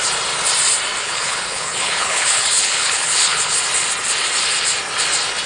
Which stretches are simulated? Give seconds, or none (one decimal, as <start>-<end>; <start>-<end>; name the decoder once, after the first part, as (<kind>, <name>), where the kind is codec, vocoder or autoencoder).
1.0-3.6 (codec, HILCodec)